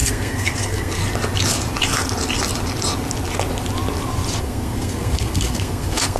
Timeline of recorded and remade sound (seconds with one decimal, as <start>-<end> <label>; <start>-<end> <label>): 0.0-1.0 remade; 1.0-4.4 recorded; 4.4-6.2 remade